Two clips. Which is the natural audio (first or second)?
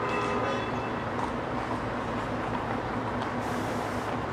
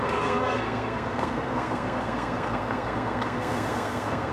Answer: first